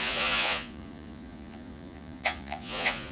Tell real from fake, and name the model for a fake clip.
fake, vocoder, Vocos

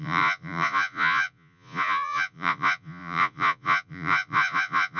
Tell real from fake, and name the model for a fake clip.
fake, vocoder, Vocos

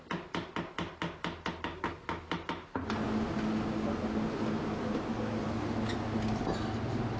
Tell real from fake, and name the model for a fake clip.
real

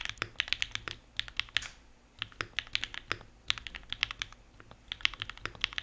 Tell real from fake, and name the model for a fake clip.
real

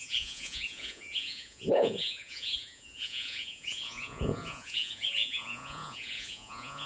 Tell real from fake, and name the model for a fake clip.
fake, vocoder, Vocos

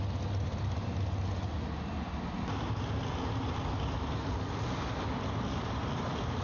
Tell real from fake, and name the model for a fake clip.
real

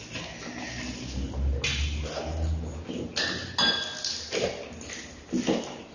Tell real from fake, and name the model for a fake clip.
real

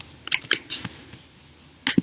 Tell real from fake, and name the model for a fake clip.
real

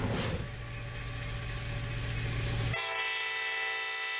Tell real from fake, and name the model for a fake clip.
real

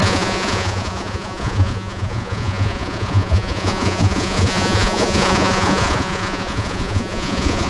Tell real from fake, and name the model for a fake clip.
fake, vocoder, Vocos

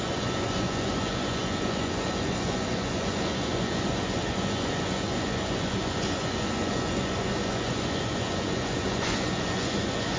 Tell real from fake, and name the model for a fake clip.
fake, vocoder, Vocos